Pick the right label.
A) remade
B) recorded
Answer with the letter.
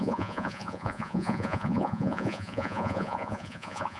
A